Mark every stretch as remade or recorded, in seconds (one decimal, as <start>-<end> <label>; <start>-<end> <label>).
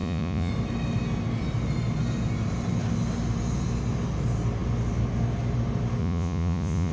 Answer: 0.0-0.5 remade; 0.5-6.0 recorded; 6.0-6.9 remade